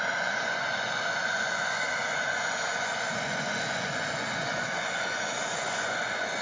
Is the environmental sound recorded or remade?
remade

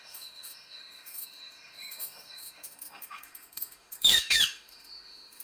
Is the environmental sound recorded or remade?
remade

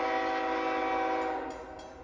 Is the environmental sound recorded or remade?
recorded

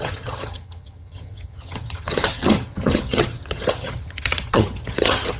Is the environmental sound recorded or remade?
remade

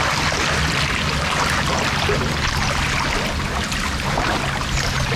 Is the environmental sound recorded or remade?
recorded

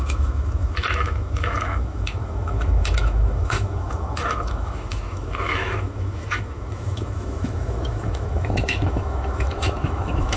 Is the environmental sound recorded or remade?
remade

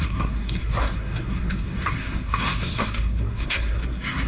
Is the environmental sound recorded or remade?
remade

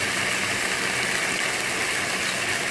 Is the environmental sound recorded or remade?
recorded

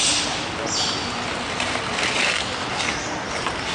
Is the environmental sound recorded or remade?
recorded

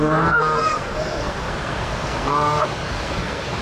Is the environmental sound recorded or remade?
remade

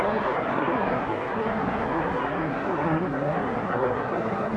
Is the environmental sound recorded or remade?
remade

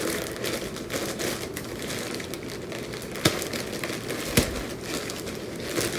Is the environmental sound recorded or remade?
recorded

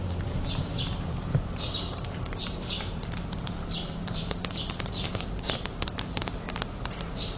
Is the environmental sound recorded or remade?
remade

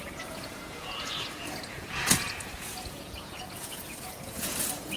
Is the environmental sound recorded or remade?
remade